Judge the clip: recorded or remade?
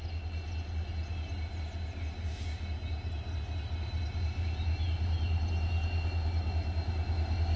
recorded